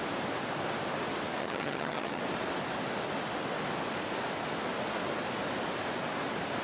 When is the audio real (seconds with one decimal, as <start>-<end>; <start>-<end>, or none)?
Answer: 0.0-1.4; 2.2-6.6